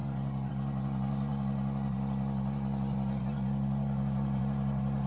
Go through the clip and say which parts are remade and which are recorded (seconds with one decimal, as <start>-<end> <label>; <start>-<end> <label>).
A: 0.0-5.1 recorded